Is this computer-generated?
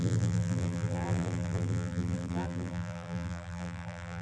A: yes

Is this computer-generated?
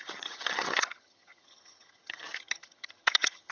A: yes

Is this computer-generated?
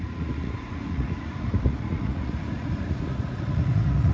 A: yes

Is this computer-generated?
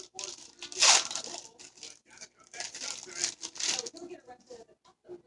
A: no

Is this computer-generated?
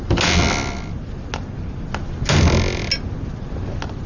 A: no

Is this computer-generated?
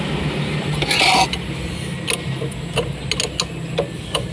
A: no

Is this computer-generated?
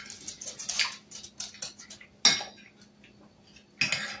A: no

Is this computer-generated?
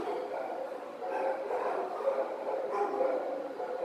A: yes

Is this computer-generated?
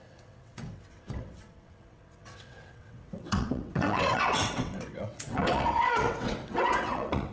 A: yes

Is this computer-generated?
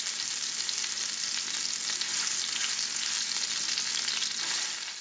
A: no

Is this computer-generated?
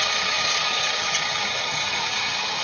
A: yes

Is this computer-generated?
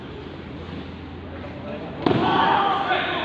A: yes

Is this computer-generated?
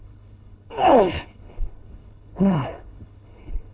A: yes